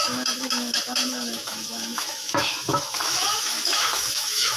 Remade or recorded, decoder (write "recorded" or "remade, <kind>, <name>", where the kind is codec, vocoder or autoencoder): remade, autoencoder, DAC-VAE